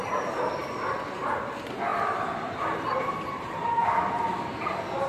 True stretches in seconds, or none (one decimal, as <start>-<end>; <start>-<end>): 0.0-5.1